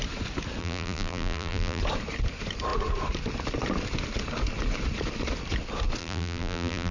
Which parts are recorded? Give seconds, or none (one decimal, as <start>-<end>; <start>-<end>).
0.0-0.6; 1.8-6.0